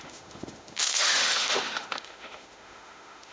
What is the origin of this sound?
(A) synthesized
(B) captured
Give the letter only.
A